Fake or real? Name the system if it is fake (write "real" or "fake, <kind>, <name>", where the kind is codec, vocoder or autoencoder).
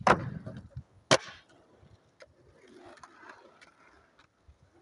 real